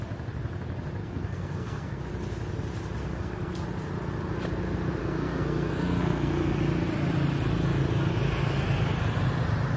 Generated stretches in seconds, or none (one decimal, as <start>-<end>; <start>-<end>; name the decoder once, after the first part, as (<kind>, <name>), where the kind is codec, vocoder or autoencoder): 1.0-2.0 (codec, SNAC); 3.0-3.5; 5.0-6.6